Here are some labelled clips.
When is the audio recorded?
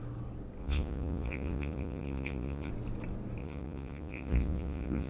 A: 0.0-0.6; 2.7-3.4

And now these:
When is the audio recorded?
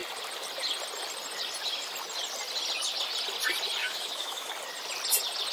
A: 0.0-3.8; 4.5-5.5